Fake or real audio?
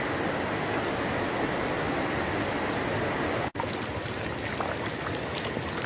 real